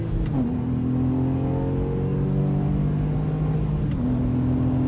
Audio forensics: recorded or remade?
recorded